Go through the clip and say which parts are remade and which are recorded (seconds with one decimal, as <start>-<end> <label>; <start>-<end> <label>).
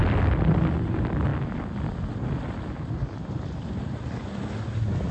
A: 0.0-5.1 recorded